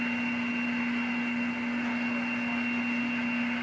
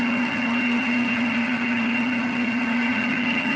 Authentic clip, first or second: first